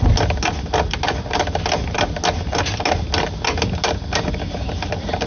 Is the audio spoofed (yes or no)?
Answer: no